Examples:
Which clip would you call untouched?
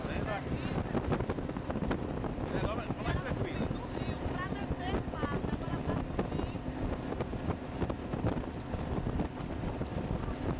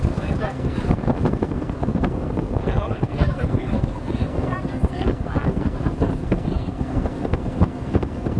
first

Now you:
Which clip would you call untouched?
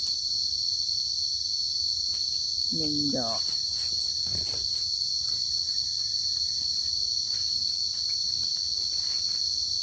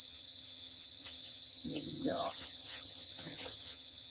first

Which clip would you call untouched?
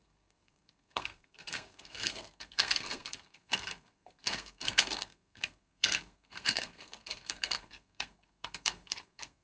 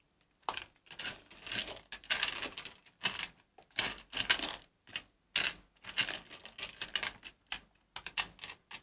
second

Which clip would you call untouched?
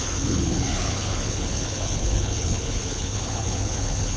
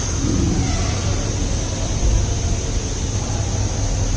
second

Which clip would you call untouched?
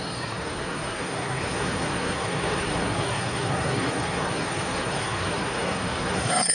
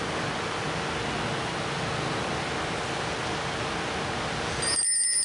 second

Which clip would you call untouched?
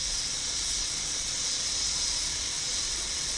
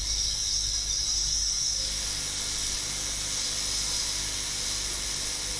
second